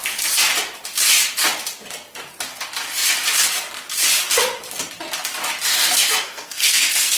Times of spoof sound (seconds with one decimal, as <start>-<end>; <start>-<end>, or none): 5.7-7.2